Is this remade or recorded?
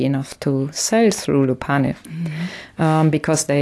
recorded